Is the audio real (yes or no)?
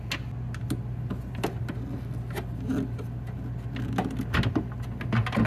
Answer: yes